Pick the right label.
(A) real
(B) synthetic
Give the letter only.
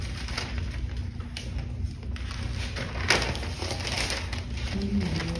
A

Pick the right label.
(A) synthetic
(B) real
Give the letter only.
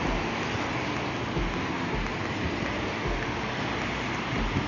B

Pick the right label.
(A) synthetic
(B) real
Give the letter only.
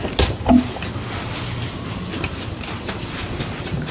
B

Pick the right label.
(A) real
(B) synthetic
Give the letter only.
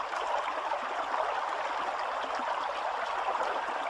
A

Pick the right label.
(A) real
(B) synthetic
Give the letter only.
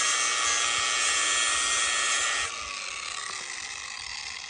A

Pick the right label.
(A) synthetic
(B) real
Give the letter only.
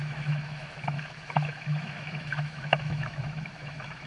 A